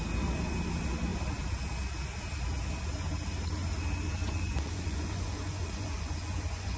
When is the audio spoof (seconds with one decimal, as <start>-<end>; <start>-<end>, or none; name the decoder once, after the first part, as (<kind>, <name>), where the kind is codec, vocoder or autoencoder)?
4.2-6.8 (vocoder, Vocos)